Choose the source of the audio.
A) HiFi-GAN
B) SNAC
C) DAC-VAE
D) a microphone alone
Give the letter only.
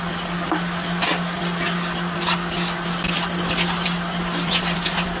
D